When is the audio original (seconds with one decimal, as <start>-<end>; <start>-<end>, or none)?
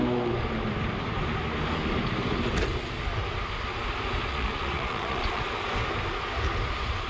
0.0-4.3; 5.4-7.1